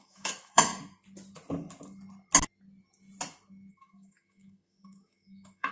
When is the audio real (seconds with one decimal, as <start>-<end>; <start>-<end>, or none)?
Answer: 0.7-3.7